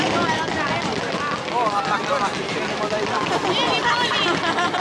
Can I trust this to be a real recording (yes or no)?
yes